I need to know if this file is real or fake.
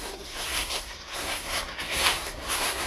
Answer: fake